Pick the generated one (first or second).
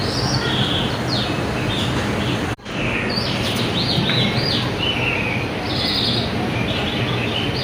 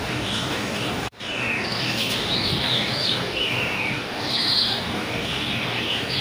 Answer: second